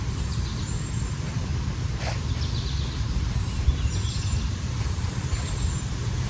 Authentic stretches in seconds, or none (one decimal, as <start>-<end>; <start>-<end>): 1.5-4.1